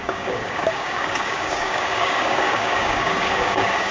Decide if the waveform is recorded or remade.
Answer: remade